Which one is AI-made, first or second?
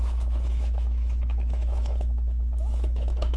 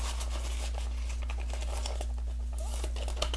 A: first